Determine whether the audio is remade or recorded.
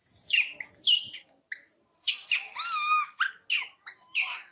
recorded